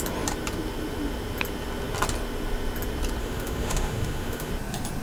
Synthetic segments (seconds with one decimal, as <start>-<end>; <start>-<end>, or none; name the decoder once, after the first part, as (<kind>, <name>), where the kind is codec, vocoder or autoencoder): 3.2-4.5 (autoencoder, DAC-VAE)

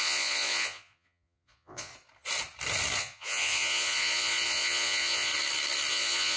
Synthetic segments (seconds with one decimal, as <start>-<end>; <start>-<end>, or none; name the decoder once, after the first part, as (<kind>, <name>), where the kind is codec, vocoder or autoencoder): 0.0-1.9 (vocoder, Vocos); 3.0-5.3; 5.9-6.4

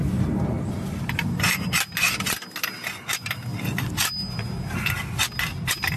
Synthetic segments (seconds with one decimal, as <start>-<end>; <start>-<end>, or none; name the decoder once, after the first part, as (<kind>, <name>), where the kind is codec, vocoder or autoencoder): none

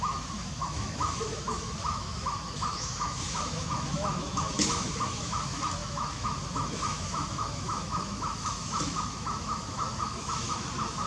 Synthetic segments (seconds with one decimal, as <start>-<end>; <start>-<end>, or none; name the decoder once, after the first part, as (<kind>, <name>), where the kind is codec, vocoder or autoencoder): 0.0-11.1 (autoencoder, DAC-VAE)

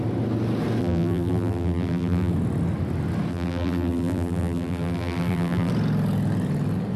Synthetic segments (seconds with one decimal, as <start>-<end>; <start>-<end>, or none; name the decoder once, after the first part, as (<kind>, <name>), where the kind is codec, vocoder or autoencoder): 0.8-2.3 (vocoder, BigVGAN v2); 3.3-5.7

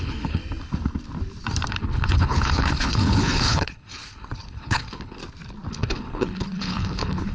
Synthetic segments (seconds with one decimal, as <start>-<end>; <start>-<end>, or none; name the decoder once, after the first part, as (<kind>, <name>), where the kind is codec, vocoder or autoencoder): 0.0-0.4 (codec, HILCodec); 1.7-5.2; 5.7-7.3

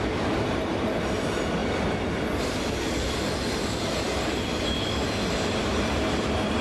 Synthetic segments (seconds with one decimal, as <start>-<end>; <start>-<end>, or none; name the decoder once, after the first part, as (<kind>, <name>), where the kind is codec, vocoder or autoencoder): none